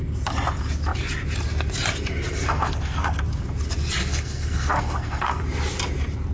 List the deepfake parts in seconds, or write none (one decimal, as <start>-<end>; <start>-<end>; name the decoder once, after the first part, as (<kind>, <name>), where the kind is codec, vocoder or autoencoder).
2.4-3.2 (codec, SNAC); 4.0-5.4